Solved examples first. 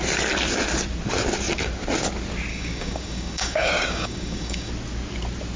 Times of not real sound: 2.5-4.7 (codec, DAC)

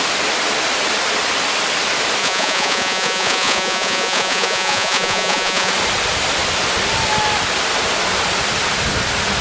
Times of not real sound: 2.2-5.7 (vocoder, Vocos)

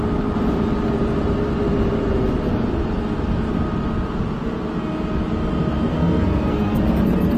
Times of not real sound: 5.9-7.0 (codec, SNAC)

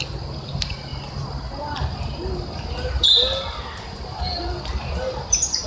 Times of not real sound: none

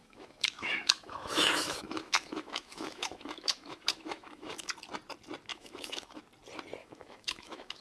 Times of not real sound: 0.0-4.7 (autoencoder, DAC-VAE); 5.5-6.2; 6.8-7.8

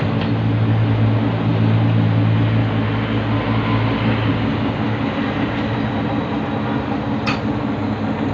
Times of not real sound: none